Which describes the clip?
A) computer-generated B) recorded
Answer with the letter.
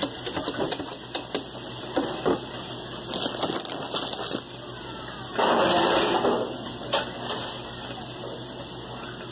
B